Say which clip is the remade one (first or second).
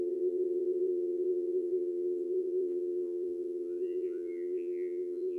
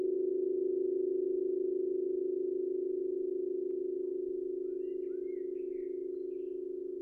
first